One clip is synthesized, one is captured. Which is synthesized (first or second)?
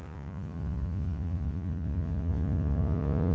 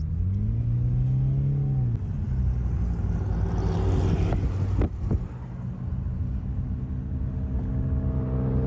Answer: first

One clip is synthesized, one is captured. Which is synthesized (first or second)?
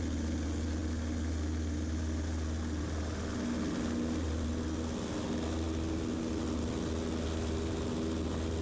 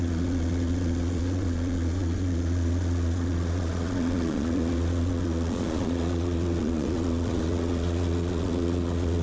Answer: second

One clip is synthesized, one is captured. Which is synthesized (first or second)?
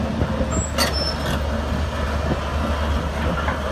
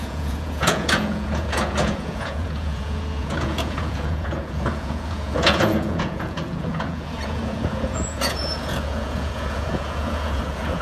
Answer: second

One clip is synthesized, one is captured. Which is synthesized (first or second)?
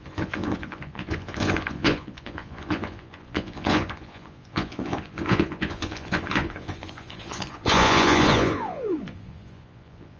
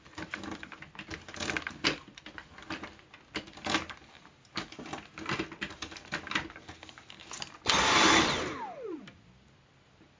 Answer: first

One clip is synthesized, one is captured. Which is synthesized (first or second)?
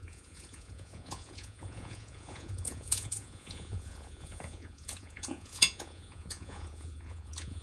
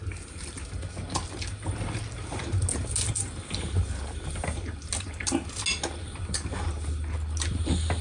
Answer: first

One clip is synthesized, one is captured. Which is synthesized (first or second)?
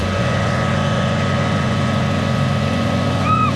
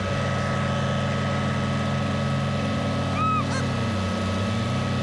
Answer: first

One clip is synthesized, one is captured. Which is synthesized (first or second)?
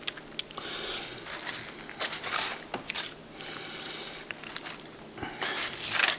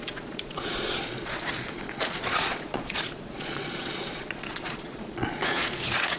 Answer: second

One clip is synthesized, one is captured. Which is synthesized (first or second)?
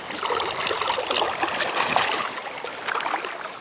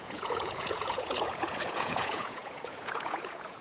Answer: second